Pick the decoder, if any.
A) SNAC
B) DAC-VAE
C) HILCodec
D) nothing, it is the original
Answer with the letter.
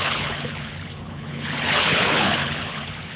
C